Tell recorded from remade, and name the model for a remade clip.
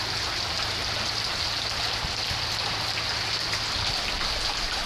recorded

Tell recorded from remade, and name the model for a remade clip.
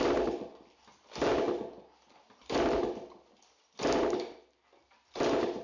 recorded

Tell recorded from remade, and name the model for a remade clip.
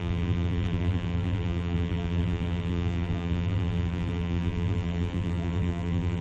remade, vocoder, BigVGAN v2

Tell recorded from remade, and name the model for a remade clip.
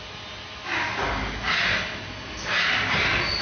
recorded